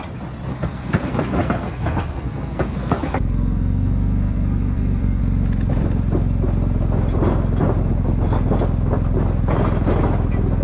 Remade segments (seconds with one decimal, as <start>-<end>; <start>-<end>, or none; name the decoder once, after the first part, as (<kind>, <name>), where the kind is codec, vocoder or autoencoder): 0.5-5.2 (codec, SNAC)